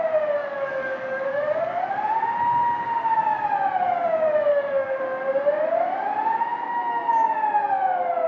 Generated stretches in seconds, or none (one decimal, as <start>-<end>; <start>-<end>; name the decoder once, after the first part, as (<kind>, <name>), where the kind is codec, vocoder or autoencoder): 0.4-1.9 (codec, DAC); 4.5-5.0